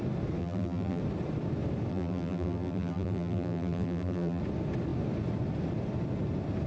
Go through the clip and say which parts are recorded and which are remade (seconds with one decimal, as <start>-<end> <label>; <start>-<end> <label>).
0.0-0.4 recorded; 0.4-1.0 remade; 1.0-1.9 recorded; 1.9-4.4 remade; 4.4-6.7 recorded